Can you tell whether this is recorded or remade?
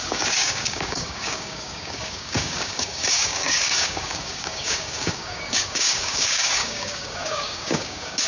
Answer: remade